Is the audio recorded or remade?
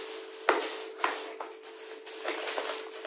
recorded